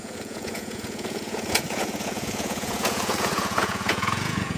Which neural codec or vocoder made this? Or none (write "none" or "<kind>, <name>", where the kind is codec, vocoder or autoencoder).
vocoder, Vocos